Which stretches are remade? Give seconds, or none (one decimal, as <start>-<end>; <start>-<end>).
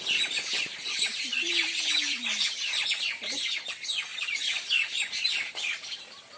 0.0-6.4